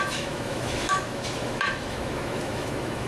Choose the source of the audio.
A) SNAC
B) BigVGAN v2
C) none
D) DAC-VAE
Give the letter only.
D